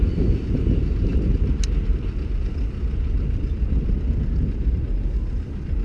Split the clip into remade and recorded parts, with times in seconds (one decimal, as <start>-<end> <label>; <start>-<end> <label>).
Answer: 0.0-5.8 recorded